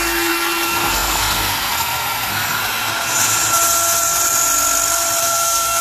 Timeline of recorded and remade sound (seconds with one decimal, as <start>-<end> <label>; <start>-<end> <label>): 0.0-2.6 remade; 2.6-5.2 recorded; 5.2-5.8 remade